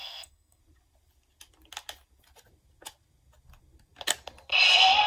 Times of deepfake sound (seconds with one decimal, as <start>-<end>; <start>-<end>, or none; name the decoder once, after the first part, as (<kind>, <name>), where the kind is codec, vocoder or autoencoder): 0.0-0.6 (codec, SNAC)